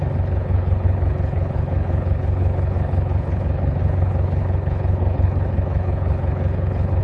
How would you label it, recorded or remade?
remade